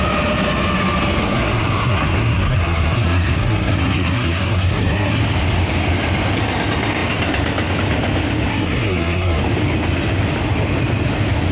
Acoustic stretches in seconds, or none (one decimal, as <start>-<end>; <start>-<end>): 0.0-1.2; 5.2-8.5; 9.4-11.5